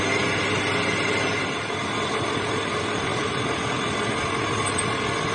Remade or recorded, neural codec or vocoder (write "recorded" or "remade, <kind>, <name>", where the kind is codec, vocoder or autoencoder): recorded